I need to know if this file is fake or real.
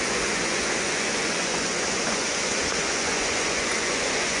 fake